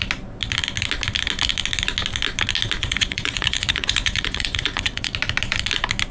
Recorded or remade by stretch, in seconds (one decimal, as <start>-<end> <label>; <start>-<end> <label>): 0.0-2.8 recorded; 2.8-5.1 remade; 5.1-6.1 recorded